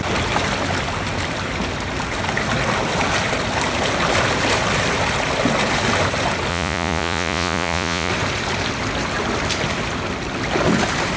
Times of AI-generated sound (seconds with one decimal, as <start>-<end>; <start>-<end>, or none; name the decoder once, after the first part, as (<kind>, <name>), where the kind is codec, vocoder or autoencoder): 6.5-8.1 (vocoder, Vocos)